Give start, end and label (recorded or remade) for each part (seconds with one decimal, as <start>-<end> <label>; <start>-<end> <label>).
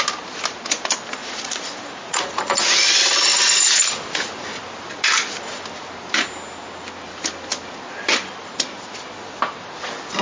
0.0-1.2 recorded; 1.2-2.2 remade; 2.2-10.2 recorded